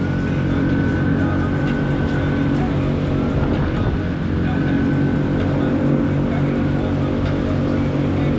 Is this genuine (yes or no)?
yes